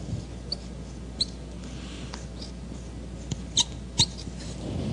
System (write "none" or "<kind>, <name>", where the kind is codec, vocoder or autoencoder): none